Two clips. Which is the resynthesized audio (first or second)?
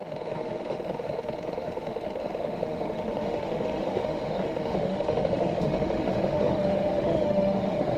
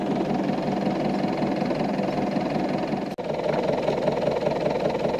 first